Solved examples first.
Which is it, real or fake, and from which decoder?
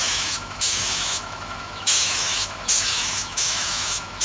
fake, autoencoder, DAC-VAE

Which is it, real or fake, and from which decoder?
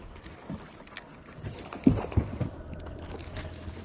real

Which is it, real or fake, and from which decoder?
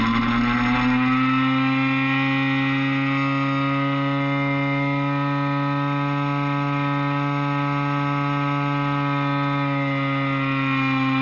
real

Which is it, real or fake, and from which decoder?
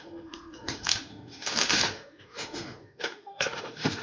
fake, autoencoder, DAC-VAE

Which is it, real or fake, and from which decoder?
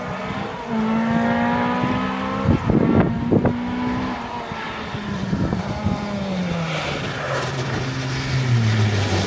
real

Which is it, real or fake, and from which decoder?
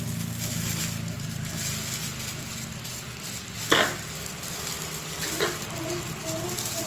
real